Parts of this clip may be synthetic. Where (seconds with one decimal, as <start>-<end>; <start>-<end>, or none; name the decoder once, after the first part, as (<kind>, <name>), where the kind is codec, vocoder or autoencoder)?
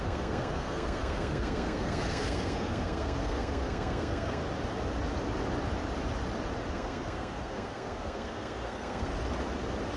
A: 0.0-4.4 (codec, SNAC); 6.7-9.1